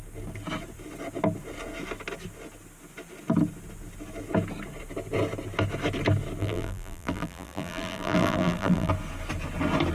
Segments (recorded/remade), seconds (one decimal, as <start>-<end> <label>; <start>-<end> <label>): 0.0-6.4 recorded; 6.4-8.9 remade; 8.9-9.9 recorded